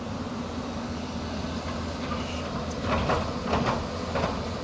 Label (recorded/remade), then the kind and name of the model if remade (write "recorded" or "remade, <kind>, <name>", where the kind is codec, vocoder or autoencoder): recorded